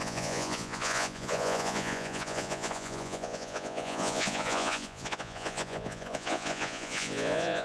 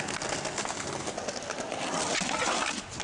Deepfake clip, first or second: first